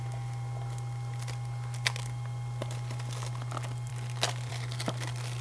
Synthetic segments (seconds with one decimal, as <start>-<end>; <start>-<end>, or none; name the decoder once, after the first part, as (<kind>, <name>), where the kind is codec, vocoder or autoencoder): none